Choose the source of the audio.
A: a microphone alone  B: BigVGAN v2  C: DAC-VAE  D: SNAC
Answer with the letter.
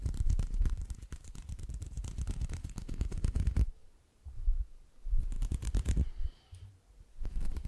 B